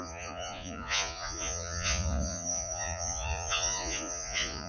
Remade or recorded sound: remade